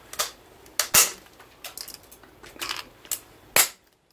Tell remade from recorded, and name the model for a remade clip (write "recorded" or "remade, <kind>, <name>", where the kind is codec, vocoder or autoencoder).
recorded